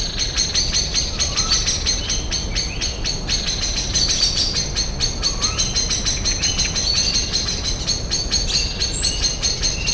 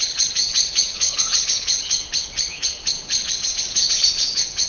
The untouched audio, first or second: first